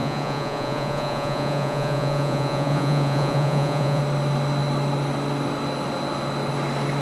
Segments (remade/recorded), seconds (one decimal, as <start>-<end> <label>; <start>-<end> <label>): 0.0-4.0 remade; 4.0-7.0 recorded